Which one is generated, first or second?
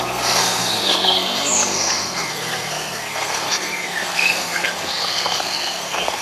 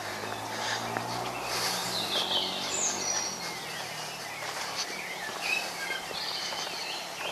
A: first